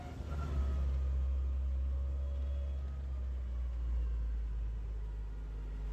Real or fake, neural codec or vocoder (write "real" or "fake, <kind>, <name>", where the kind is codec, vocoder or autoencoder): real